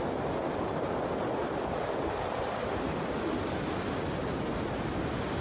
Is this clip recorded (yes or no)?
yes